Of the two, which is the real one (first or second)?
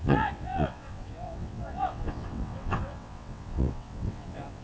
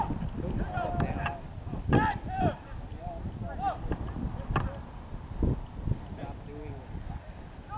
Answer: second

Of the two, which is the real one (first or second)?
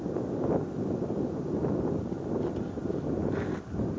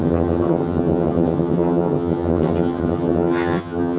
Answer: first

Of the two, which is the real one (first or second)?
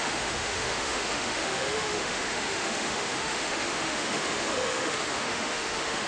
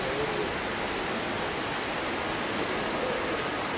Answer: second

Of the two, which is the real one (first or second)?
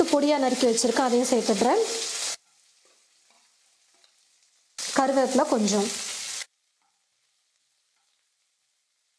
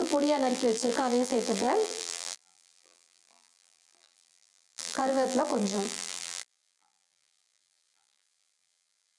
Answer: first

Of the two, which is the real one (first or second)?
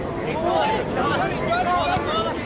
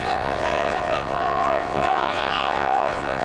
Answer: first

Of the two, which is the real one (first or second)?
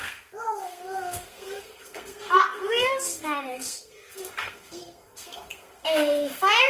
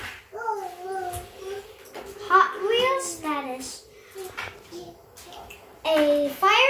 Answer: second